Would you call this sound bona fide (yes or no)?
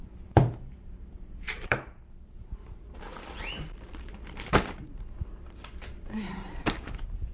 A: no